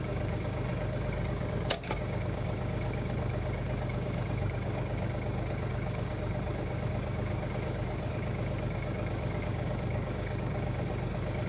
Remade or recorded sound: remade